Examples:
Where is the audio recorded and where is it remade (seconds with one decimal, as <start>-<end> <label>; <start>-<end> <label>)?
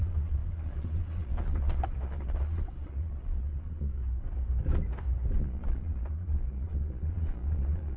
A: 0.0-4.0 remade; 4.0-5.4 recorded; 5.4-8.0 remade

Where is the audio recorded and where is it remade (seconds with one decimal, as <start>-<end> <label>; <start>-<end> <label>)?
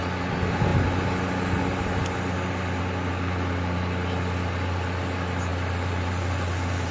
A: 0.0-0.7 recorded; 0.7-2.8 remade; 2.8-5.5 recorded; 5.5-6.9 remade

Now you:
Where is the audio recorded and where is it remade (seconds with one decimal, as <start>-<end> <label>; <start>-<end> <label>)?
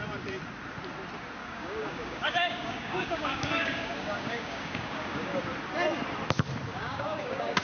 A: 0.0-1.4 recorded; 1.4-5.4 remade; 5.4-6.7 recorded; 6.7-7.6 remade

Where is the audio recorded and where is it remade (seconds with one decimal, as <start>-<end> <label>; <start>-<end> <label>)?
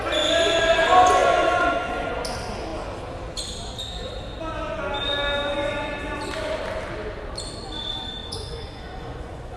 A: 0.0-1.2 recorded; 1.2-1.9 remade; 1.9-8.2 recorded; 8.2-9.6 remade